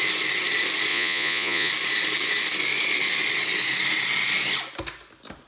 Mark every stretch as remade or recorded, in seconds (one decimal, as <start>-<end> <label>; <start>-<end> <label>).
0.0-0.9 recorded; 0.9-1.7 remade; 1.7-5.5 recorded